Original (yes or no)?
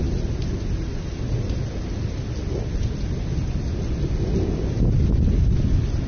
yes